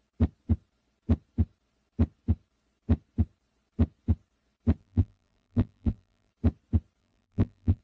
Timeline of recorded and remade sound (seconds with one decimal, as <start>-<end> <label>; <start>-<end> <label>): 0.0-4.8 recorded; 4.8-6.3 remade; 6.3-7.0 recorded; 7.0-7.8 remade